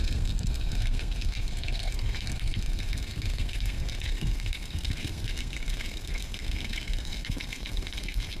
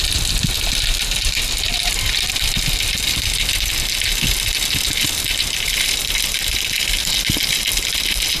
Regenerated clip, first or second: first